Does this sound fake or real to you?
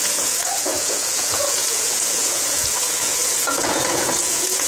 fake